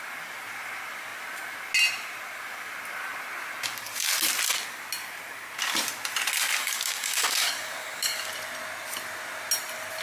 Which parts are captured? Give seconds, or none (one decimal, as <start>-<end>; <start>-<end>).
0.0-6.6; 8.3-10.0